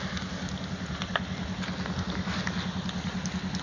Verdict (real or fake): real